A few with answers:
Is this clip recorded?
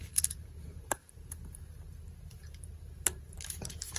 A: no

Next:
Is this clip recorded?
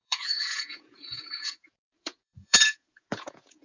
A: no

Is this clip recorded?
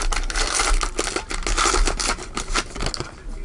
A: yes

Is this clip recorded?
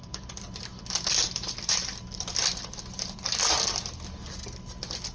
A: yes